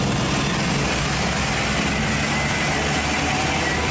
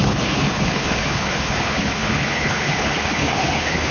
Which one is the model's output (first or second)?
second